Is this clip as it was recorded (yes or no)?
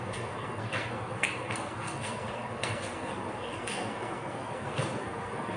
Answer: no